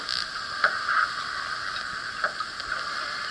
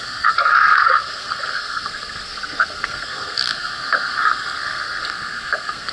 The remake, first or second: second